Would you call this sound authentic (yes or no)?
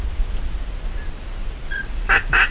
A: yes